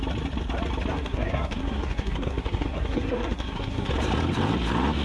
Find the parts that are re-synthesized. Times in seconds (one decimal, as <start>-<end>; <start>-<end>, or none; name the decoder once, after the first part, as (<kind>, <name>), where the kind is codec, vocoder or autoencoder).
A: 0.9-3.9 (codec, SNAC)